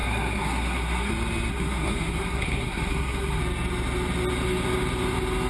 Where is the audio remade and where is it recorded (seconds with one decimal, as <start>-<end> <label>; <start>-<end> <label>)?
0.0-1.1 remade; 1.1-1.5 recorded; 1.5-3.4 remade; 3.4-5.5 recorded